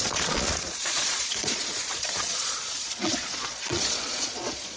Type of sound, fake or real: fake